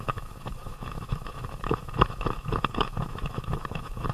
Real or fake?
fake